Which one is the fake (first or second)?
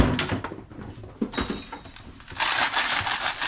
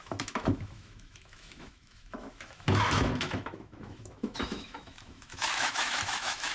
second